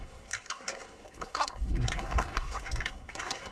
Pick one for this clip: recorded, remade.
remade